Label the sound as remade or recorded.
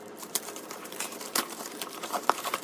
remade